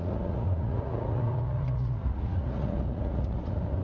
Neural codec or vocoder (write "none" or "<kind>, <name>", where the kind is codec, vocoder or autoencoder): vocoder, Vocos